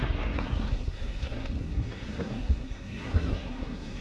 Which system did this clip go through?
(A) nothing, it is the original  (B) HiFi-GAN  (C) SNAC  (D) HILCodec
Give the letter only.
C